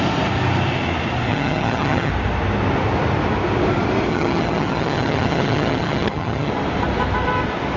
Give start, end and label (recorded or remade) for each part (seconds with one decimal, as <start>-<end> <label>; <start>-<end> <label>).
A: 0.0-1.3 recorded; 1.3-2.1 remade; 2.1-4.1 recorded; 4.1-6.5 remade; 6.5-7.8 recorded